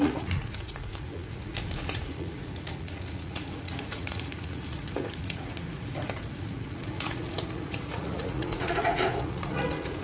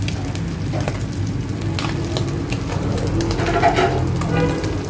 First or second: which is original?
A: second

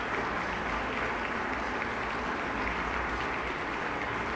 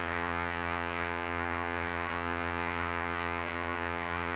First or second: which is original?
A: first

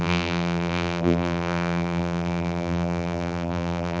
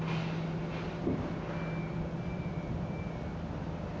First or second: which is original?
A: second